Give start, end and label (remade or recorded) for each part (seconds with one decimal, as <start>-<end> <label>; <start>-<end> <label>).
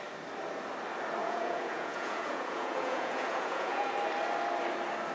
0.0-1.2 recorded; 1.2-3.9 remade; 3.9-5.1 recorded